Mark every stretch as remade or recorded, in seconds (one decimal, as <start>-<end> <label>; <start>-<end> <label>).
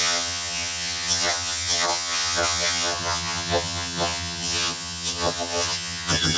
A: 0.0-6.4 remade